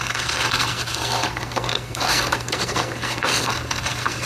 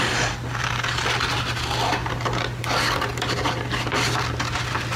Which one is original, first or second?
second